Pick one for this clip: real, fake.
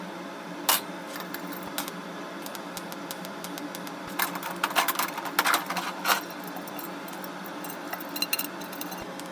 real